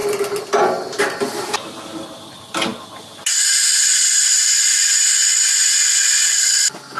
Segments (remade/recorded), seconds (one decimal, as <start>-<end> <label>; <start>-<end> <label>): 0.0-7.0 recorded